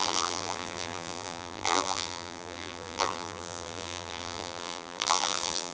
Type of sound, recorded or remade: remade